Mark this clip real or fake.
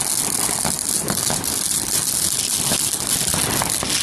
real